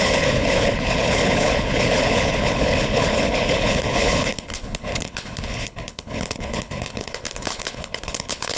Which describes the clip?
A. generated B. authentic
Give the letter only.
A